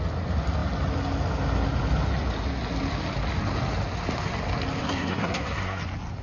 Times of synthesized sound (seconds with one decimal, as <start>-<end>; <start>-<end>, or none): 4.8-5.8